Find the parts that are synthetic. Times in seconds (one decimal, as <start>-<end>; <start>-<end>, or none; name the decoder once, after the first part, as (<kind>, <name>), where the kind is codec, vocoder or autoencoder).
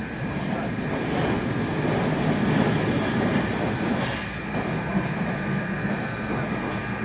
none